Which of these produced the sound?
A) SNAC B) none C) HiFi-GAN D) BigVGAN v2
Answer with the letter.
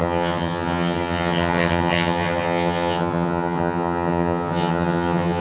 C